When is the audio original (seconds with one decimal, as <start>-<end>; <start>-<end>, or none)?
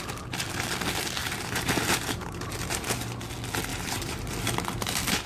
0.0-1.2; 2.9-3.7; 4.3-5.3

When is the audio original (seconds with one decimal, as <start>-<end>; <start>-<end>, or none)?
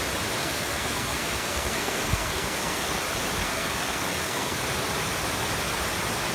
0.0-0.4; 3.0-3.4; 4.6-6.3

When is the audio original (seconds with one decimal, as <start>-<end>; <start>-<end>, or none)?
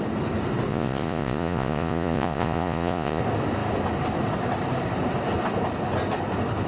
0.0-0.7; 3.2-6.7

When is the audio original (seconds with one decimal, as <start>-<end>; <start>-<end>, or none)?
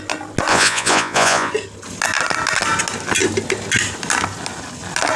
0.0-0.5; 1.5-5.2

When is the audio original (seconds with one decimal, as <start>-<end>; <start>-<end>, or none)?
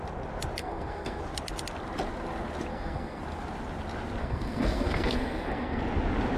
0.0-0.6; 1.2-2.7; 3.2-4.2; 5.8-6.4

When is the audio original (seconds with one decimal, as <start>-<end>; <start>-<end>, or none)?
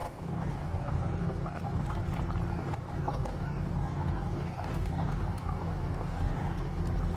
2.0-2.5; 6.8-7.2